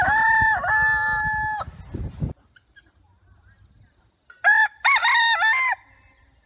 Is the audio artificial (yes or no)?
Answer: no